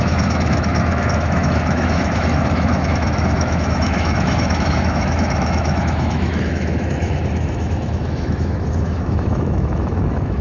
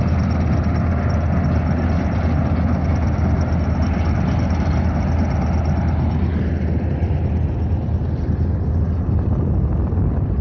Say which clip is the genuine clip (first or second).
second